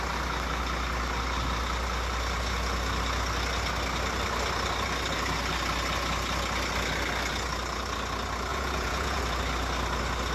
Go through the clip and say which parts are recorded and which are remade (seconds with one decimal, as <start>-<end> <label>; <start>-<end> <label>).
0.0-8.5 recorded; 8.5-9.2 remade; 9.2-10.3 recorded